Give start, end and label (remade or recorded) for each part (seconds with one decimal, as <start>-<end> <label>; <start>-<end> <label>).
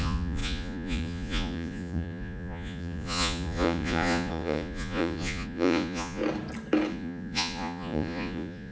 0.0-6.2 remade; 6.2-6.9 recorded; 6.9-8.7 remade